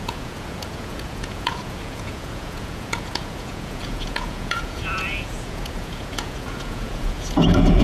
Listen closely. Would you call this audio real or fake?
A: fake